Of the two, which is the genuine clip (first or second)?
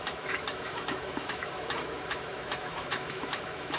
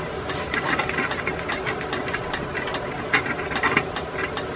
second